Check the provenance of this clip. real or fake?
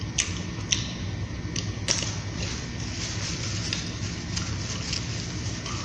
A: real